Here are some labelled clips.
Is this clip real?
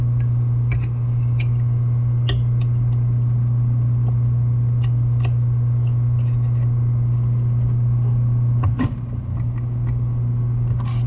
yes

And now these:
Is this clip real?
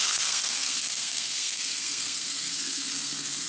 no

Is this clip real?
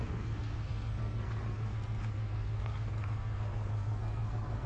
no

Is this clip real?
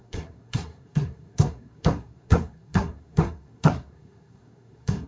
no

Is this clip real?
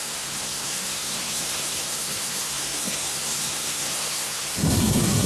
no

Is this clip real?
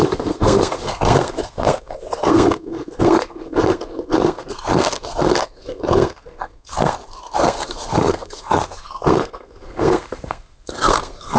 no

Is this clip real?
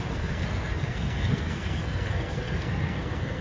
no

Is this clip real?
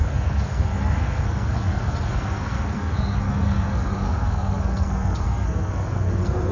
no